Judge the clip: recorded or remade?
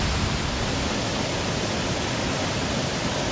recorded